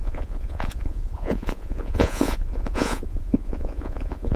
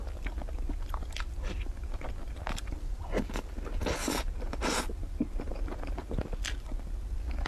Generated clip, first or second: first